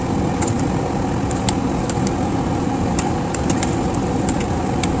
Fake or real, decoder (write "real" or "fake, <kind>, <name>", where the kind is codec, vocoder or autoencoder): real